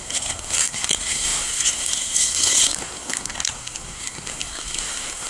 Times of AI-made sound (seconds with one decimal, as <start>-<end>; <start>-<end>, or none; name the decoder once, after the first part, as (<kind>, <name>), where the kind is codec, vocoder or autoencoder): 0.0-5.3 (codec, SNAC)